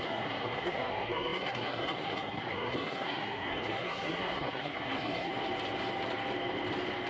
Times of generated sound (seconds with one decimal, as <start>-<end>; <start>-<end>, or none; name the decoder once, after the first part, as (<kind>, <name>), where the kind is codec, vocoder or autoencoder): 0.0-5.3 (codec, SNAC)